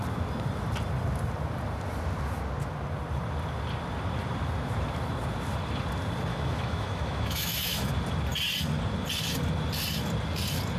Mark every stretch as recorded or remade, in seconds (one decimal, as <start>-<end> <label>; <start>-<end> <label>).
0.0-6.3 recorded; 6.3-7.9 remade; 7.9-10.8 recorded